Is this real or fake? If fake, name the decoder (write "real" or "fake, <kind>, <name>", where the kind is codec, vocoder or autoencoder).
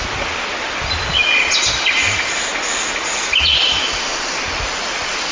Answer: real